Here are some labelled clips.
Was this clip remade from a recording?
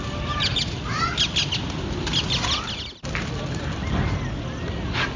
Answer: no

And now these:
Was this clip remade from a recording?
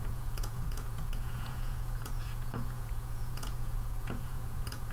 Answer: yes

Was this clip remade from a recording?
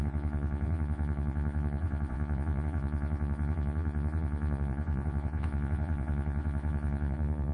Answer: yes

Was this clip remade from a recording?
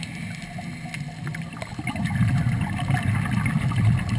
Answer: no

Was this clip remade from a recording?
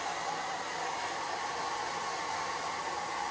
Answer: no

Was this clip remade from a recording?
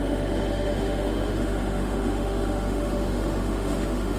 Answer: yes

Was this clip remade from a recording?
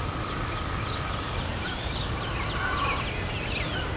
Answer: no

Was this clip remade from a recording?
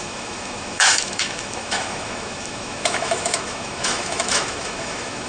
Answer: yes